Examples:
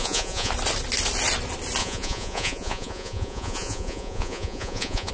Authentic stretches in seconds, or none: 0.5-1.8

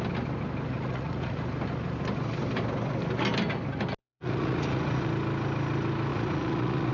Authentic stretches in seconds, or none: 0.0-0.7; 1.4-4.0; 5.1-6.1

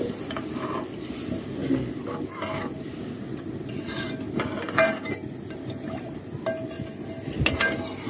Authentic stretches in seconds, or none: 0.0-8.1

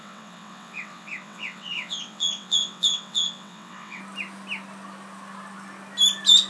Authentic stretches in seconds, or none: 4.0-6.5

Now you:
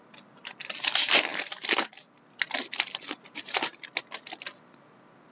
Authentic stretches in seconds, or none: 0.0-5.3